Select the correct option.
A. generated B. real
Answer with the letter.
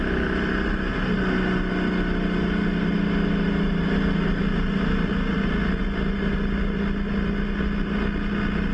B